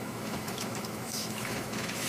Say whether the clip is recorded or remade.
remade